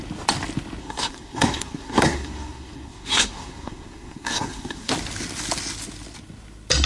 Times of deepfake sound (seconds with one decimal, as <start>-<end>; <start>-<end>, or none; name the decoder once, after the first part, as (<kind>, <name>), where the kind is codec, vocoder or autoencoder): 0.8-4.9 (codec, SNAC)